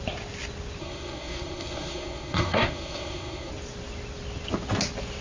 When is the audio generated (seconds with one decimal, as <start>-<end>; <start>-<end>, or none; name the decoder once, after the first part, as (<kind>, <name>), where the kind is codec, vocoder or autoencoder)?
0.8-3.5 (codec, SNAC)